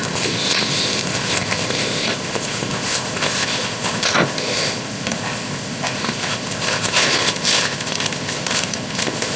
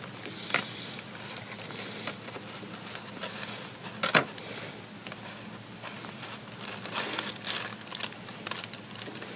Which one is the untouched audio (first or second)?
second